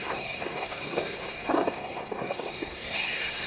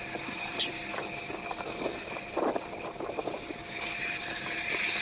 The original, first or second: second